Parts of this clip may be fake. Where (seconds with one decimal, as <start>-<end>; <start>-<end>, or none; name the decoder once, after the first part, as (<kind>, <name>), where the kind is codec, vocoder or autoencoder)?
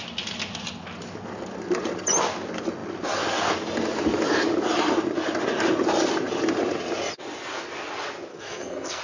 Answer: 8.3-9.0 (codec, SNAC)